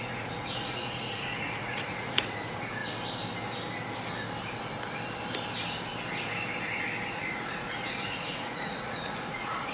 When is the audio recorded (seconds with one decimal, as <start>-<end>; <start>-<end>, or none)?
2.8-7.1